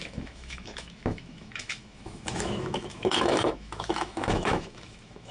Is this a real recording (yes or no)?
no